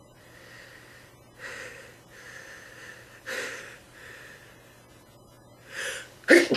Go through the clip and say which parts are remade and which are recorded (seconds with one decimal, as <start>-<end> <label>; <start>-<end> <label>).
0.0-6.6 recorded